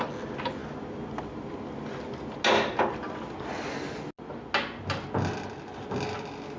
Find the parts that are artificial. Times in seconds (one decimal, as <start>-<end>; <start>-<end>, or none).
none

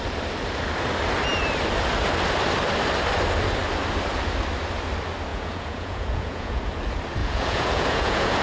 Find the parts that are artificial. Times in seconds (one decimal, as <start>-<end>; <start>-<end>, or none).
5.3-6.6; 7.2-8.4

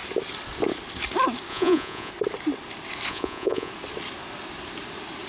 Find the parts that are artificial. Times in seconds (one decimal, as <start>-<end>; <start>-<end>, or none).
1.5-2.1; 3.1-3.7